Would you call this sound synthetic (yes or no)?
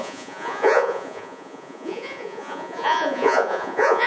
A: yes